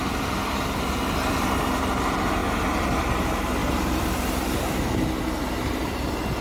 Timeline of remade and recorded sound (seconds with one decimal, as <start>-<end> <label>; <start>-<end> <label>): 0.0-3.6 recorded; 3.6-4.2 remade; 4.2-6.4 recorded